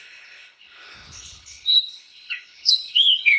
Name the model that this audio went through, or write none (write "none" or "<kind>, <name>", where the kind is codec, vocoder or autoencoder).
codec, HILCodec